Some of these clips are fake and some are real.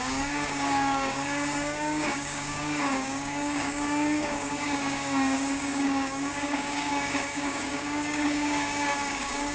fake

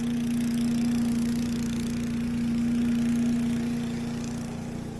real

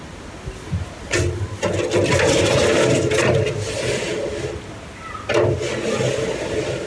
real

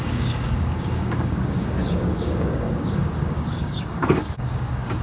fake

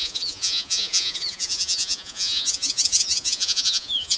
fake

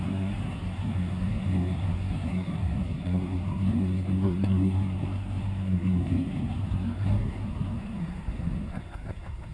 fake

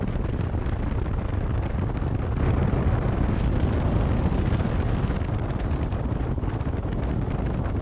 real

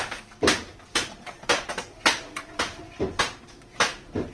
fake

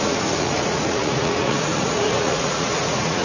fake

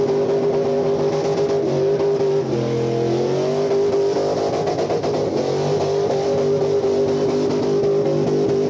real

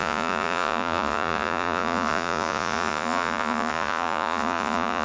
fake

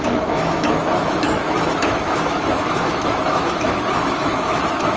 fake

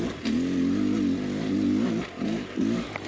real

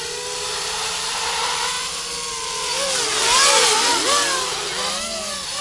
real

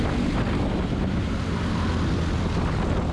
real